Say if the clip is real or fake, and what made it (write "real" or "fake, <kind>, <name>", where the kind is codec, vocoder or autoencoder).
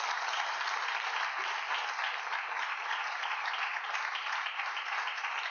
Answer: real